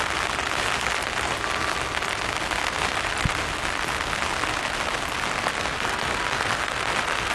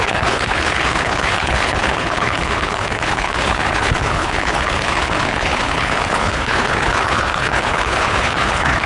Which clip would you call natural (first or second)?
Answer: first